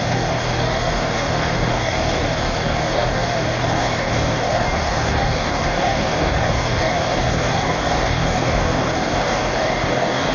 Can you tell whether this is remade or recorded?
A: remade